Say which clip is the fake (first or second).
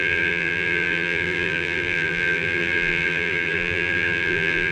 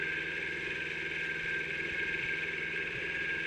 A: first